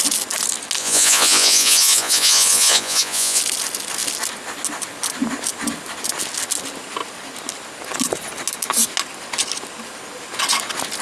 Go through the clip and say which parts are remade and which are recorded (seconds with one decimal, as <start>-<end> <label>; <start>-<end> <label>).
0.0-0.8 recorded; 0.8-3.4 remade; 3.4-11.0 recorded